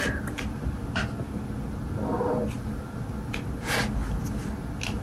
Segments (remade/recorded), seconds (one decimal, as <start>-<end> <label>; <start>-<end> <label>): 0.0-5.0 recorded